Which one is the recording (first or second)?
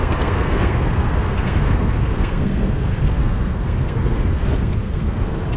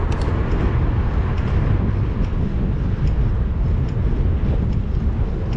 second